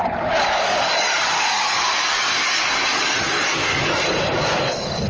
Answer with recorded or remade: remade